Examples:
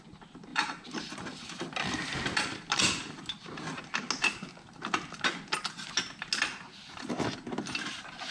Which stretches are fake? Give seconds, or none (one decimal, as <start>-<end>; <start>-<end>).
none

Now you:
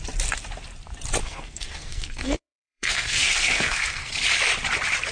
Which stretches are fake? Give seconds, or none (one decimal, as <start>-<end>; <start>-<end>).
1.2-4.1

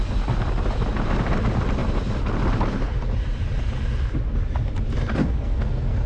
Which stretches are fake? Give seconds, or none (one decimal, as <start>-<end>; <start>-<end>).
5.2-6.1